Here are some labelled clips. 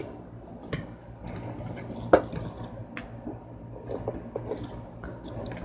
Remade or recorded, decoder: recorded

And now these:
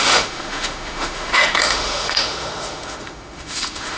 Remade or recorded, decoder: remade, autoencoder, DAC-VAE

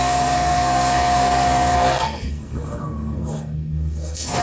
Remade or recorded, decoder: remade, codec, SNAC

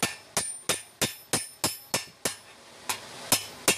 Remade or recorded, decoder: recorded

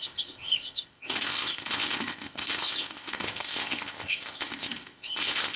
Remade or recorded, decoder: remade, codec, ZipCodec